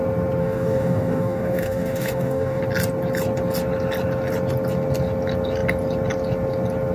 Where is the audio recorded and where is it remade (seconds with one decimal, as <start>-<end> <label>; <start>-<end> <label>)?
0.0-0.4 recorded; 0.4-2.6 remade; 2.6-6.9 recorded